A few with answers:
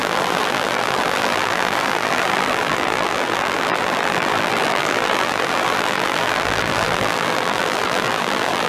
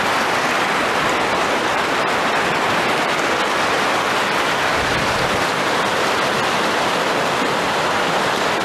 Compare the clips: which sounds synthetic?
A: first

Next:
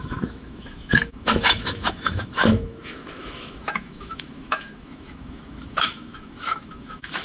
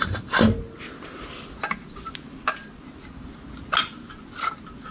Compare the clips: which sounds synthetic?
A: first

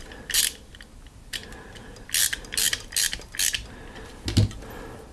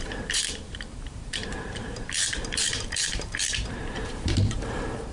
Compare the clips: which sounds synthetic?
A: second